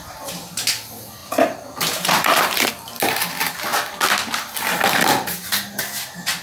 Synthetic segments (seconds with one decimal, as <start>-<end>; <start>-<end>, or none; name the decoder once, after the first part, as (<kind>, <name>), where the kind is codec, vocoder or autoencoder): 1.2-2.7 (vocoder, BigVGAN v2)